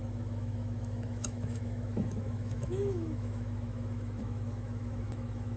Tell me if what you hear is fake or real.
fake